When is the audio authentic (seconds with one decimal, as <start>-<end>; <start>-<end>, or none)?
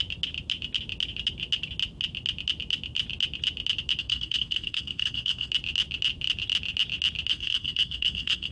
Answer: 0.0-4.0; 5.5-7.3